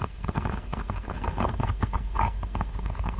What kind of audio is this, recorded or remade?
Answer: remade